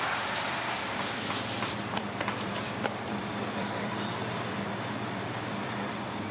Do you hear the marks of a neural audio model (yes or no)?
yes